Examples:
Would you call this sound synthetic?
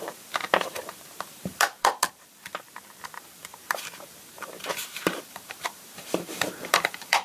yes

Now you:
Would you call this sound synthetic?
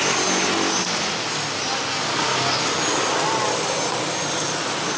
no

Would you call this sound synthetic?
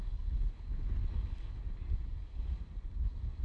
no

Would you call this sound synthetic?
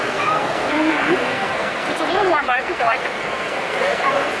yes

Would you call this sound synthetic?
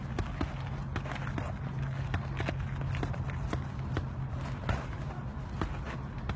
no